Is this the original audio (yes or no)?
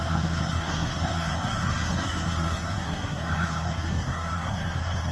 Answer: no